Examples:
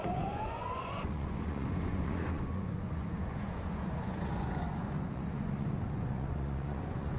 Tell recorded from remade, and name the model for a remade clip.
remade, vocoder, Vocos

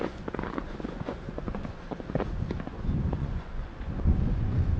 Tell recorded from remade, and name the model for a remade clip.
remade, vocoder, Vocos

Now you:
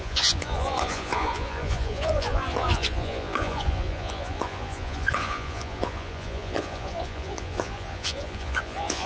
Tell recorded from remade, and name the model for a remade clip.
remade, vocoder, Vocos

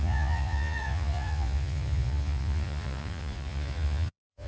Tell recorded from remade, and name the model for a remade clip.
remade, vocoder, Vocos